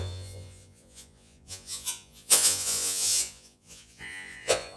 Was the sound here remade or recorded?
remade